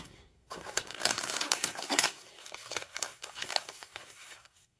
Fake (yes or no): yes